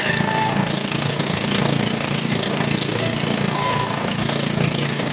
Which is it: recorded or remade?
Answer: remade